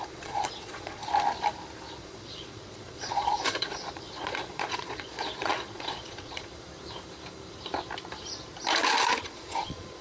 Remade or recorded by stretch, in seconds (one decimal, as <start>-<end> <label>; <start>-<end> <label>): 0.0-1.0 remade; 1.0-1.9 recorded; 1.9-6.5 remade; 6.5-9.2 recorded; 9.2-10.0 remade